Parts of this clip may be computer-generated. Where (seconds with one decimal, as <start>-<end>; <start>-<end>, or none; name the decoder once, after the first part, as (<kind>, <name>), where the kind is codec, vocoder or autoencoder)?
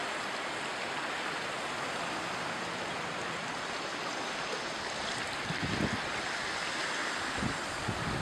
none